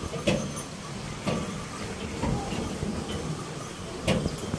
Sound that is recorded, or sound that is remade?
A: recorded